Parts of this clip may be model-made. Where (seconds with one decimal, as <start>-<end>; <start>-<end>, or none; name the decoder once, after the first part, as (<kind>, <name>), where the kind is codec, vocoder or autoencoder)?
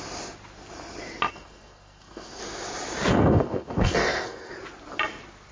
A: 1.3-2.4 (codec, SNAC); 3.1-4.5